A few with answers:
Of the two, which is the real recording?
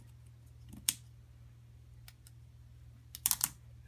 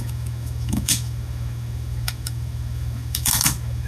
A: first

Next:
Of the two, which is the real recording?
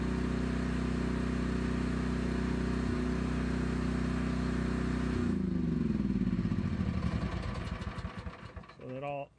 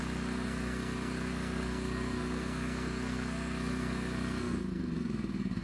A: first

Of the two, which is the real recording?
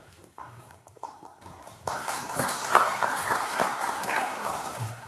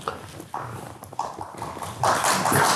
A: second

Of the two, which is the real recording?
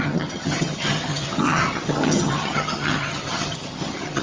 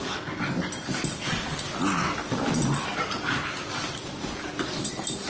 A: second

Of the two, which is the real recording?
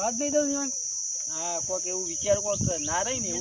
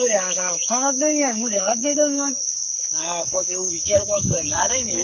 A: first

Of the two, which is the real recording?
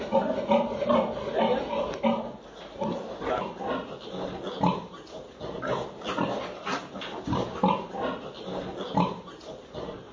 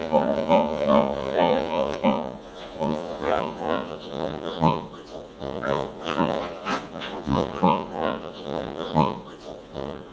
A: first